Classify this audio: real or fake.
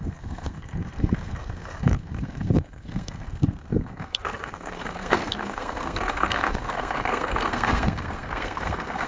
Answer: fake